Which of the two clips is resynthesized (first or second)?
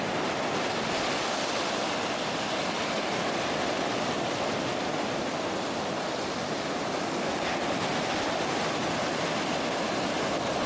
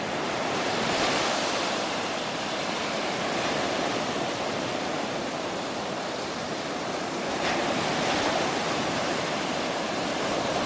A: second